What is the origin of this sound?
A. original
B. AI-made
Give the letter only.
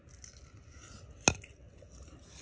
A